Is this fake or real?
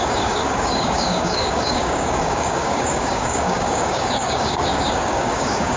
fake